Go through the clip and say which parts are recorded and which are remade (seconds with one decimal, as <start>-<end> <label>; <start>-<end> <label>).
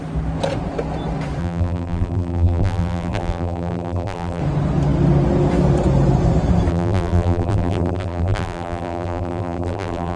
0.0-1.4 recorded; 1.4-4.4 remade; 4.4-6.7 recorded; 6.7-10.2 remade